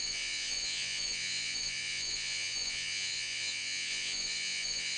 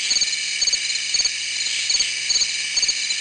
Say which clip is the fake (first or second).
first